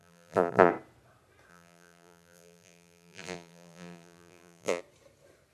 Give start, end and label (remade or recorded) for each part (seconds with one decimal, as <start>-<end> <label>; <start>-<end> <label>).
0.0-0.7 remade; 0.7-1.5 recorded; 1.5-4.8 remade; 4.8-5.5 recorded